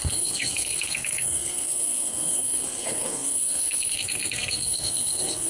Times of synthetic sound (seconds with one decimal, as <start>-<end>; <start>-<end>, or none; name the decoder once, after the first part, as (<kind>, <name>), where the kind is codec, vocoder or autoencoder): 0.0-5.5 (codec, SNAC)